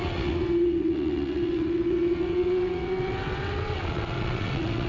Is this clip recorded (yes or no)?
no